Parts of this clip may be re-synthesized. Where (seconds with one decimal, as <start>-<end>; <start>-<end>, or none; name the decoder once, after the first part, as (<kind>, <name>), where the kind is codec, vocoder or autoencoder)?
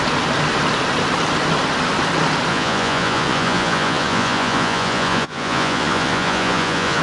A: 2.5-7.0 (vocoder, Vocos)